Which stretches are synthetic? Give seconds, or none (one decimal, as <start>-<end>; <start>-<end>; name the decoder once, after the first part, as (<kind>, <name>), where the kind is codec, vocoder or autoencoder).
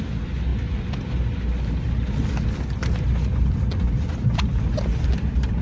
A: none